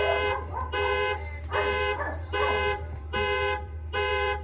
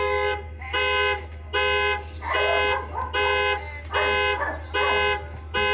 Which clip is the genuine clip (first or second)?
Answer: second